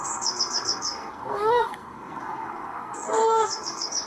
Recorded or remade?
remade